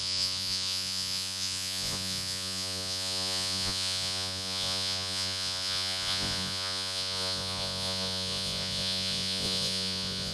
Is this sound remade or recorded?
remade